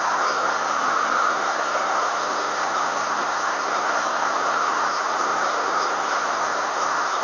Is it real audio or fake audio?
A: fake